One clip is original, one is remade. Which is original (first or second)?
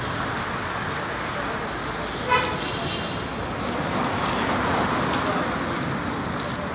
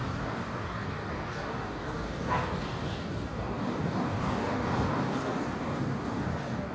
first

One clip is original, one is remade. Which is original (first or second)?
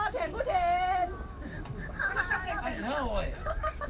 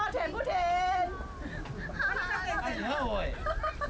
second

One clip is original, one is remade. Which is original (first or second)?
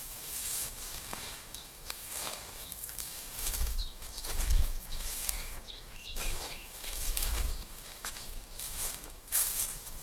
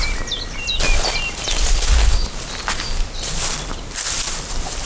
second